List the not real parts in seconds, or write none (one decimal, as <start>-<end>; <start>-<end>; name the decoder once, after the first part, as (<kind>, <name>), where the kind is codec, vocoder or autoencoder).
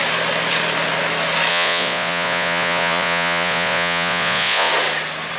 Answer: 1.5-4.7 (vocoder, Vocos)